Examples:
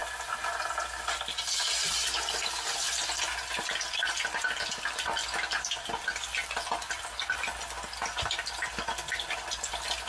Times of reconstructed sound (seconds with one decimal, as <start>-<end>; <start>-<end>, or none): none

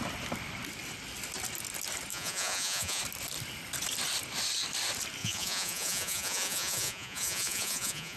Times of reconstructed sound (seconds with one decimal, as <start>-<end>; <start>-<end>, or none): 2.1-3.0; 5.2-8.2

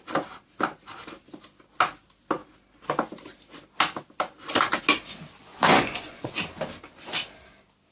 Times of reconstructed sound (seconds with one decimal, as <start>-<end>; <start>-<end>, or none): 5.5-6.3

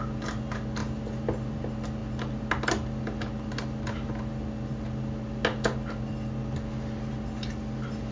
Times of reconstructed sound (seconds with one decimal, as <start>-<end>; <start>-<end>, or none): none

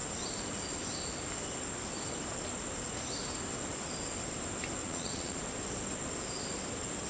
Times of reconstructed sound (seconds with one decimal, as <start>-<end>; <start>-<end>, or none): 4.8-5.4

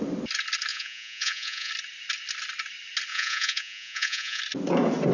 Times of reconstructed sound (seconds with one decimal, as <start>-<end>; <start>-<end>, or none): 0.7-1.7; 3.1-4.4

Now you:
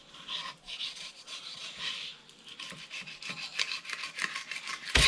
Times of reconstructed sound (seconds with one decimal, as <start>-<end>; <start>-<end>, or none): 0.6-1.8